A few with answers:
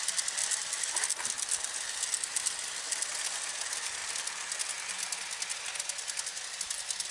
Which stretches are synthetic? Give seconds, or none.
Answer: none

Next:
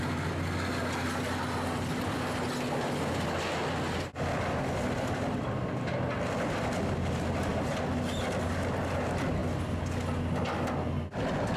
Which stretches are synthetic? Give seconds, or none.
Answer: none

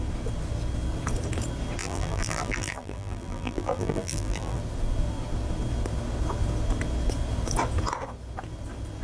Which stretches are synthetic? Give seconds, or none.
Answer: 1.8-4.6 (vocoder, BigVGAN v2)

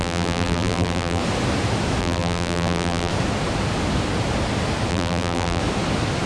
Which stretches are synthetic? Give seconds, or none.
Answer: 0.0-1.2 (vocoder, BigVGAN v2); 2.0-3.1; 4.9-5.6

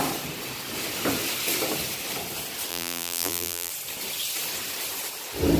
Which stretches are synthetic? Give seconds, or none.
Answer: 2.7-3.7 (vocoder, BigVGAN v2)

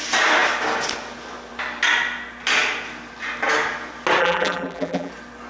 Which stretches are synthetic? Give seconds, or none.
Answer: 4.2-5.1 (vocoder, BigVGAN v2)

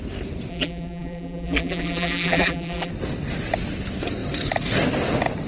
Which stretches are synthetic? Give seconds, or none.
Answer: 0.5-2.9 (vocoder, BigVGAN v2)

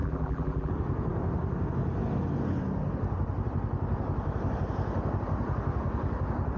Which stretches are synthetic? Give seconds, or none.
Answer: 0.0-0.7 (vocoder, BigVGAN v2)